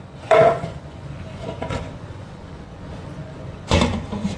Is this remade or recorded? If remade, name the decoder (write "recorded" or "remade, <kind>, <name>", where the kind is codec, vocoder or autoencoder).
remade, vocoder, Vocos